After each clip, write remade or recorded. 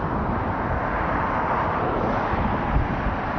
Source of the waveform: recorded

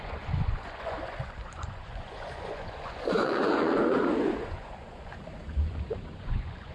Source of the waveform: remade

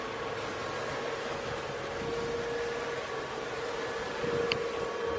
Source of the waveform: recorded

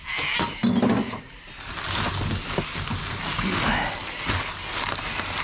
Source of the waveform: recorded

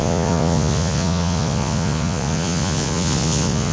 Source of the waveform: remade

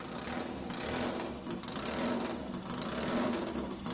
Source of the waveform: recorded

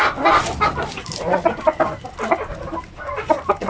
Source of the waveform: recorded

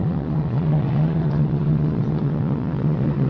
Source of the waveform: remade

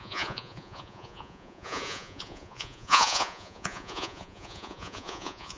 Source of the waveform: remade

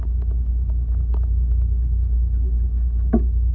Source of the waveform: recorded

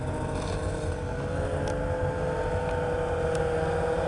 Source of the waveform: recorded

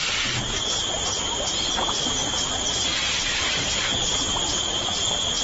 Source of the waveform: recorded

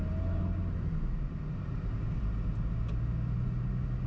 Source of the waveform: recorded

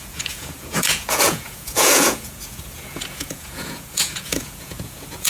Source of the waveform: remade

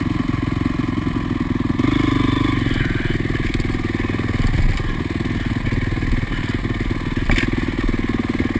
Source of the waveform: recorded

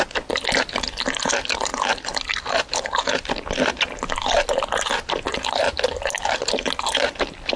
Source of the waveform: recorded